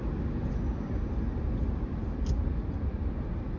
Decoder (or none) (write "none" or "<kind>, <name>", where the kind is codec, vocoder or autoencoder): none